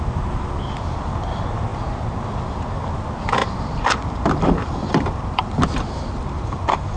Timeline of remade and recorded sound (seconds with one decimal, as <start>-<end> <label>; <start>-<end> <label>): 0.0-3.4 recorded; 3.4-7.0 remade